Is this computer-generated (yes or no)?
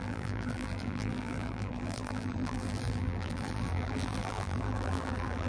yes